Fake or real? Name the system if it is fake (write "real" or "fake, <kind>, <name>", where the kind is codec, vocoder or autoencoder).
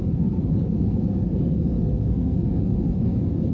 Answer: fake, codec, SNAC